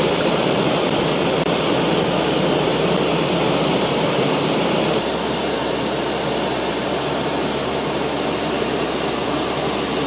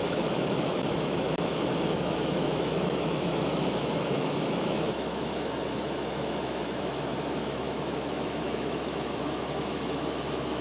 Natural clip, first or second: first